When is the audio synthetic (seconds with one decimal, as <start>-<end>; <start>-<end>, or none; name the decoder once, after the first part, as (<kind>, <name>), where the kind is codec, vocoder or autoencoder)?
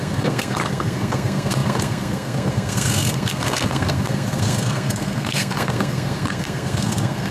0.0-7.3 (codec, SNAC)